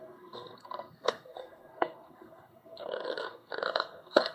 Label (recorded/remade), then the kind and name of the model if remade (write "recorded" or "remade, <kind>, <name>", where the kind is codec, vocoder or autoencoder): remade, codec, SNAC